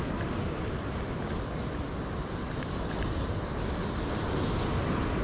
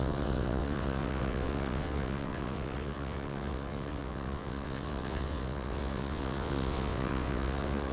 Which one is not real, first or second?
second